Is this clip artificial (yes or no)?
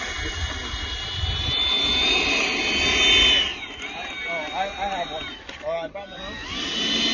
no